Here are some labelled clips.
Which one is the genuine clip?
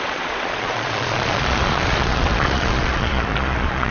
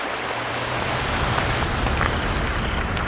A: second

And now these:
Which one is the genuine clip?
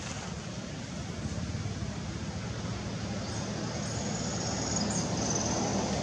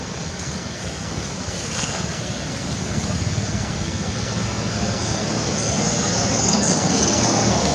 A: first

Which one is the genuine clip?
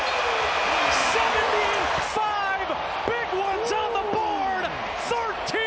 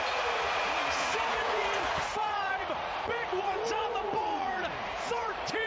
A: first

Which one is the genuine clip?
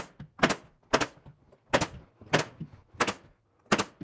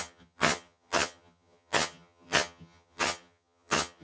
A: first